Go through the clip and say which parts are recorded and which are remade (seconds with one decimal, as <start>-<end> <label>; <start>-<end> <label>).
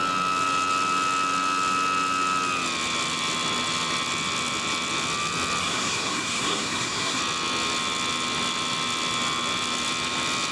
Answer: 0.0-5.6 recorded; 5.6-7.2 remade; 7.2-10.5 recorded